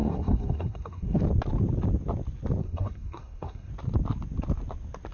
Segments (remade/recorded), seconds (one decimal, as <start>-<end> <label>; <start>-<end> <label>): 0.0-1.2 remade; 1.2-2.6 recorded; 2.6-3.7 remade; 3.7-5.1 recorded